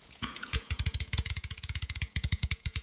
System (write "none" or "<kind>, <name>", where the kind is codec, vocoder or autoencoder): vocoder, Vocos